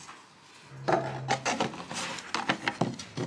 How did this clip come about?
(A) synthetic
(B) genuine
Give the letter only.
B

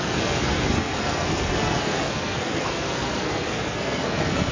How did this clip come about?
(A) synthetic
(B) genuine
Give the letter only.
A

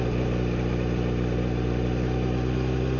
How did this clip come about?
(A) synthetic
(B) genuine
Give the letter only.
B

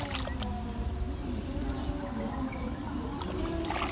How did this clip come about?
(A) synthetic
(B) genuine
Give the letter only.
B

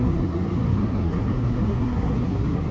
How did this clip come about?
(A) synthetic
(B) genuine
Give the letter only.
A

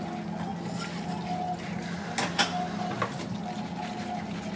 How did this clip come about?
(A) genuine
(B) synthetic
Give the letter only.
A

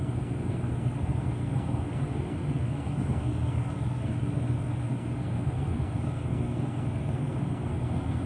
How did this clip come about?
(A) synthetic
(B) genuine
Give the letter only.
A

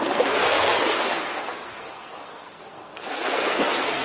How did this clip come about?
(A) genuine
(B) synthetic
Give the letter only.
B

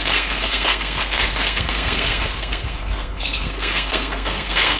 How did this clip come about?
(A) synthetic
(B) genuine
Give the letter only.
A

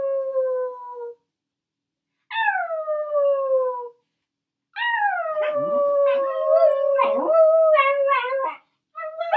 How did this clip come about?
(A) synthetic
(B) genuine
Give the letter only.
B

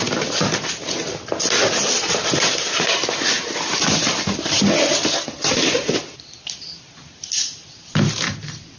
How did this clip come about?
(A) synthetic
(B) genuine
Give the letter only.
B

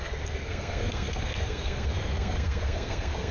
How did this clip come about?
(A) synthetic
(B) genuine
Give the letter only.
A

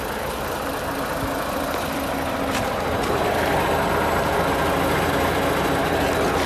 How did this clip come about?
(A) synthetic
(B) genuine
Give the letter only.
B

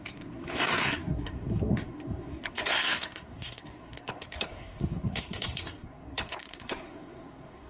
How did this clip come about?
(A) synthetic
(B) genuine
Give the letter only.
A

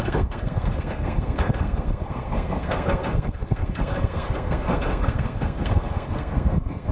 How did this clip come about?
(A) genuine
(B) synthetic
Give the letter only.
B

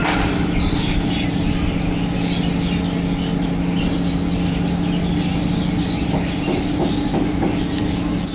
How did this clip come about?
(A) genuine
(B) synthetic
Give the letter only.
A